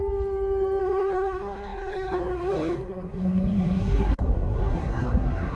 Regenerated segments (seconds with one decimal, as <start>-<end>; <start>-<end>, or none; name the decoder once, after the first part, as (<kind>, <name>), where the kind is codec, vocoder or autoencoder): 0.8-5.5 (codec, SNAC)